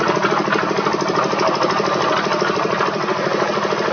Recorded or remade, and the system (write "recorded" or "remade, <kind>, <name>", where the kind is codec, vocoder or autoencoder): recorded